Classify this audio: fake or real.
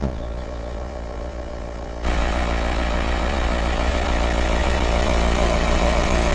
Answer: fake